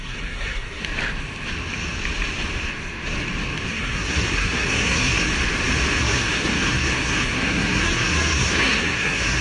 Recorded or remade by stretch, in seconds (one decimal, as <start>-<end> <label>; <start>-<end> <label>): 0.0-0.8 remade; 0.8-3.7 recorded; 3.7-5.3 remade; 5.3-6.0 recorded; 6.0-9.4 remade